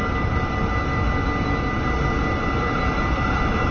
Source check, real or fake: real